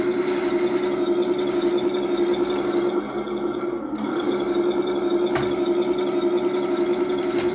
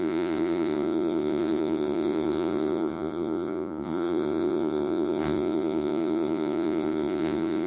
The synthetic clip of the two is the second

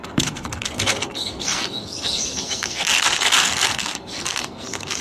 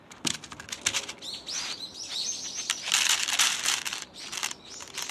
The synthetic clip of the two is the first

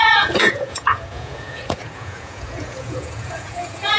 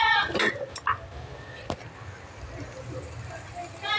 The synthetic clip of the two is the first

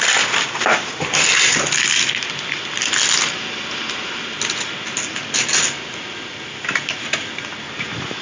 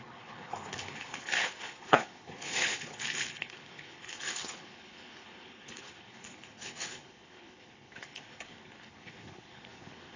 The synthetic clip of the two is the second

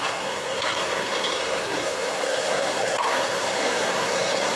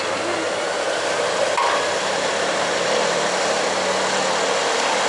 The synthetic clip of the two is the first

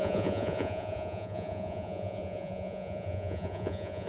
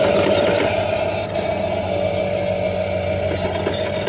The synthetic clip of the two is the first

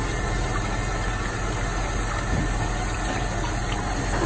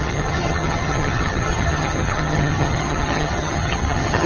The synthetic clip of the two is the second